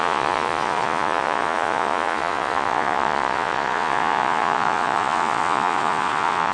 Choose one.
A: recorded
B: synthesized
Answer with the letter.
B